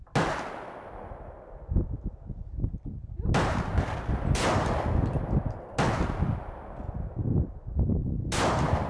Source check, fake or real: real